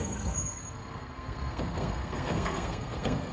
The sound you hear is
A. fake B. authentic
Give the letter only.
A